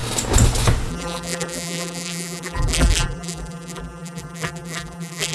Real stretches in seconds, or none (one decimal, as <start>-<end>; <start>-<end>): 0.0-0.9